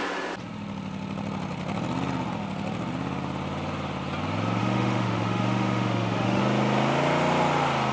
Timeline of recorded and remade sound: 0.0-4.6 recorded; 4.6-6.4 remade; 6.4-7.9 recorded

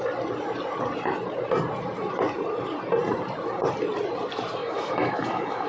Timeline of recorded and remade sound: 0.0-4.6 recorded; 4.6-5.7 remade

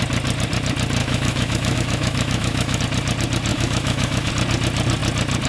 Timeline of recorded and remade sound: 0.0-1.0 recorded; 1.0-2.8 remade; 2.8-3.5 recorded; 3.5-4.3 remade; 4.3-5.5 recorded